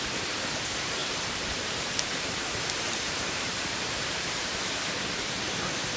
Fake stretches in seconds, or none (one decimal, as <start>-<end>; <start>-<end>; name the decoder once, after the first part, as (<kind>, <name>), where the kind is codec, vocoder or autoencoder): 1.0-4.6 (vocoder, BigVGAN v2)